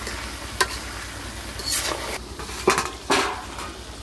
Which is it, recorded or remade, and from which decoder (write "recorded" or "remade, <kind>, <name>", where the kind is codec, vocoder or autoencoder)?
recorded